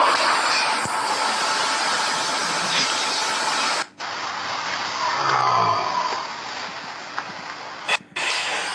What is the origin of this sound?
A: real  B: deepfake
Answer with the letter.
A